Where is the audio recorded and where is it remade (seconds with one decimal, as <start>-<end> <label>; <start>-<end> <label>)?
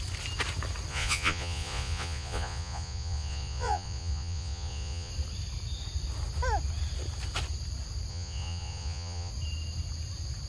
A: 0.0-0.9 recorded; 0.9-5.1 remade; 5.1-8.1 recorded; 8.1-9.3 remade; 9.3-10.5 recorded